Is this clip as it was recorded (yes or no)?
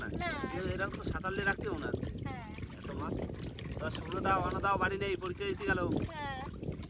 yes